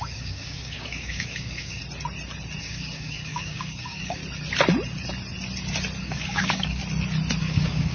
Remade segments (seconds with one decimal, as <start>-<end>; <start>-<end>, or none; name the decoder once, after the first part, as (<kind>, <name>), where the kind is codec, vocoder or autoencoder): 0.0-1.8 (codec, DAC); 2.6-4.2; 6.0-6.8; 7.4-7.9